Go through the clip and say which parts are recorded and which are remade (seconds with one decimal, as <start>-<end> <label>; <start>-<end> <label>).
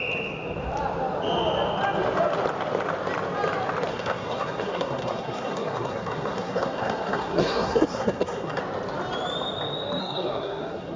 0.0-3.9 recorded; 3.9-8.6 remade; 8.6-10.0 recorded; 10.0-11.0 remade